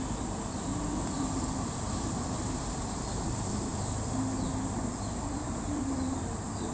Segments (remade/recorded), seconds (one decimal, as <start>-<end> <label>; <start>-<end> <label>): 0.0-0.7 remade; 0.7-1.9 recorded; 1.9-3.7 remade; 3.7-4.9 recorded; 4.9-6.7 remade